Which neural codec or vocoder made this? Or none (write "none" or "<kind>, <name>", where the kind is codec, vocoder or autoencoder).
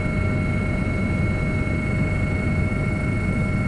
none